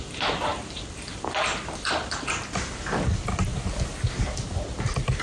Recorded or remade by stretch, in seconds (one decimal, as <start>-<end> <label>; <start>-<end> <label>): 0.0-0.5 recorded; 0.5-1.9 remade; 1.9-5.2 recorded